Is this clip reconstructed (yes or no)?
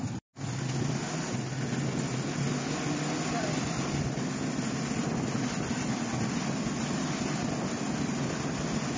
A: no